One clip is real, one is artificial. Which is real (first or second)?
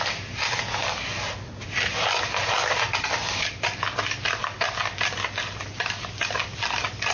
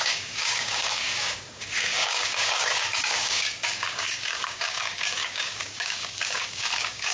first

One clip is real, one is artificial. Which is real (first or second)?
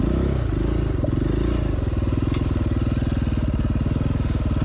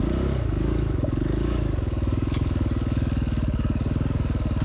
first